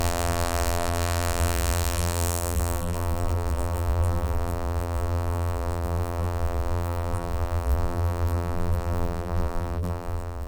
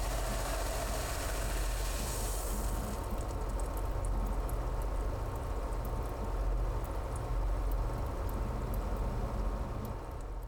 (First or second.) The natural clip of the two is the second